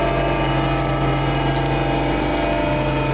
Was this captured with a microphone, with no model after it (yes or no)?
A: yes